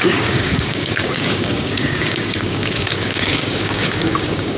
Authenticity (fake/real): fake